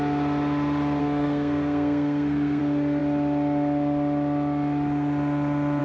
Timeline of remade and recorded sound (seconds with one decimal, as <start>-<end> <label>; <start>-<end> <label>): 0.0-1.0 recorded; 1.0-2.6 remade; 2.6-5.8 recorded